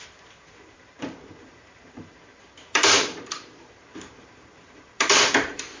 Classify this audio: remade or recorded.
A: remade